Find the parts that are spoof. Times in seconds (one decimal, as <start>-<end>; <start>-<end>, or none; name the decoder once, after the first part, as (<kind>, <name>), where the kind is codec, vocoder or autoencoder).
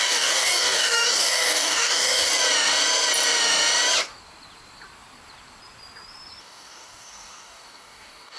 0.0-2.3 (codec, DAC); 6.4-8.4